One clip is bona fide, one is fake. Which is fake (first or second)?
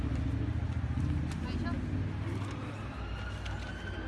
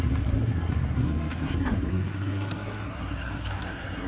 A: second